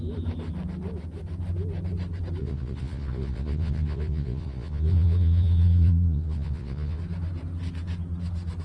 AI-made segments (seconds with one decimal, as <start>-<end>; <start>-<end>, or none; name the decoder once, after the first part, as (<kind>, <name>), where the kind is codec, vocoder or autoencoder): 2.4-7.0 (vocoder, Vocos)